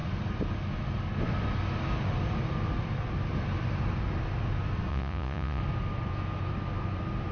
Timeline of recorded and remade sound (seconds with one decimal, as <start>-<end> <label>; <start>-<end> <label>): 0.0-4.9 recorded; 4.9-5.6 remade; 5.6-7.3 recorded